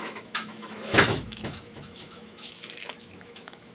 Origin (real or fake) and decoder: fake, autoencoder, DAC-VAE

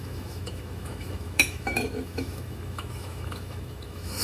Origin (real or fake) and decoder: fake, autoencoder, DAC-VAE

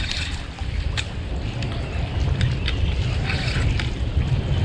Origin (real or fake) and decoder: real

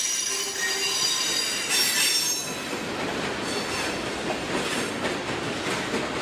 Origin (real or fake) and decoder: real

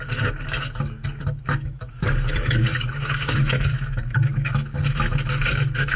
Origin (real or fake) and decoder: fake, autoencoder, DAC-VAE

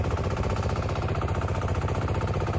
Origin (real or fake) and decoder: real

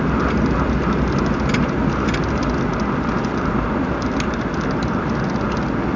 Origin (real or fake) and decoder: real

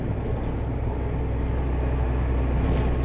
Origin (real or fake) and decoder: real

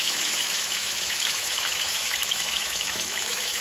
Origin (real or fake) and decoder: fake, autoencoder, DAC-VAE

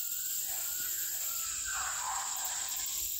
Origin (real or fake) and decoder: real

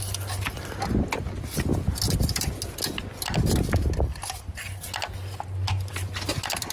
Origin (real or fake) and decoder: real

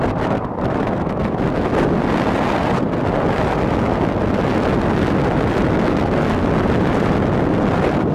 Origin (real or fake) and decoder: real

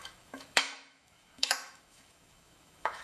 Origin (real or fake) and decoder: fake, autoencoder, DAC-VAE